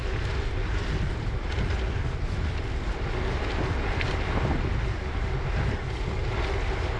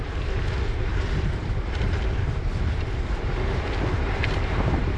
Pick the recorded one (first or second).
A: first